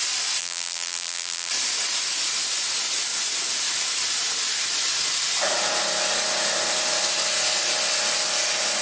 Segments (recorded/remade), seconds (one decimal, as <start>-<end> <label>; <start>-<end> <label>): 0.0-0.4 recorded; 0.4-1.5 remade; 1.5-8.8 recorded